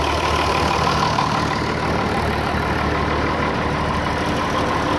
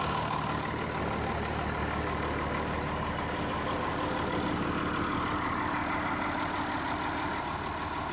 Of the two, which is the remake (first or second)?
first